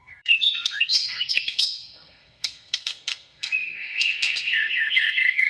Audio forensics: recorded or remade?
remade